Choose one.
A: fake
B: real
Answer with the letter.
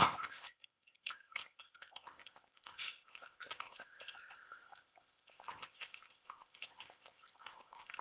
A